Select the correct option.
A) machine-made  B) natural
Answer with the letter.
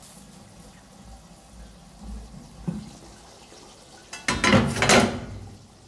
B